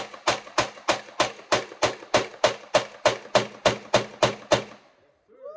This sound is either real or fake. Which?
real